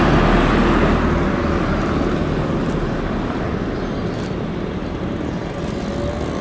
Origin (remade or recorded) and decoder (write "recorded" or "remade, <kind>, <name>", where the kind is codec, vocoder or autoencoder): recorded